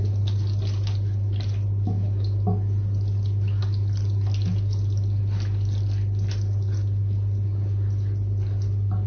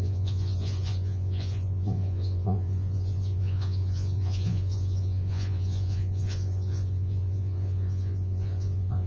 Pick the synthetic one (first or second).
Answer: second